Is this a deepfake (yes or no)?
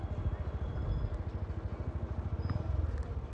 no